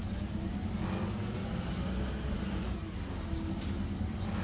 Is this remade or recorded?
recorded